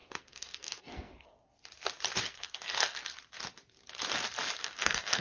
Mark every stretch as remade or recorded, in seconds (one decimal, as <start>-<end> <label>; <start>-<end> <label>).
0.0-1.5 remade; 1.5-2.2 recorded; 2.2-3.1 remade; 3.1-4.6 recorded; 4.6-5.2 remade